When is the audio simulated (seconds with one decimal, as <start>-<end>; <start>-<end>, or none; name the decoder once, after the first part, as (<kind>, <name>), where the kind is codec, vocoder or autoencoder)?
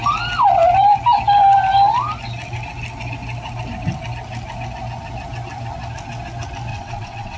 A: 6.7-7.4 (vocoder, WaveNeXt)